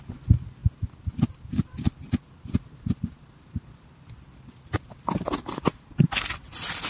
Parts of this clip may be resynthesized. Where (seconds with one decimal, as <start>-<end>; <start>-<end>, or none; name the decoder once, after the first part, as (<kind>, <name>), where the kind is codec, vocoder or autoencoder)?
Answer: 0.0-0.6 (vocoder, BigVGAN v2); 3.6-6.9